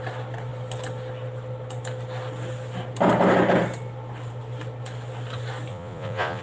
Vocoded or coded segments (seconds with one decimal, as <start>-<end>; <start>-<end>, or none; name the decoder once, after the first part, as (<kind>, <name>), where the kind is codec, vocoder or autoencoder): 5.7-6.4 (vocoder, Vocos)